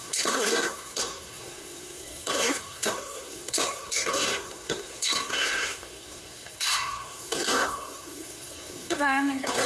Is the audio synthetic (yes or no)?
yes